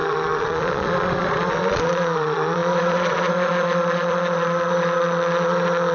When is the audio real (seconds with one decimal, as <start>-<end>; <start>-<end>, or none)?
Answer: none